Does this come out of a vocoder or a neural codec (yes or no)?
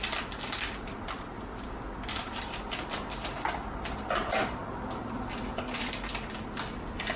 no